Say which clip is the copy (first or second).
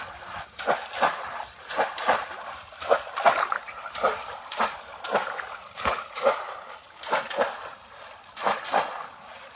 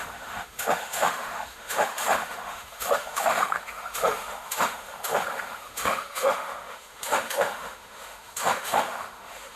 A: second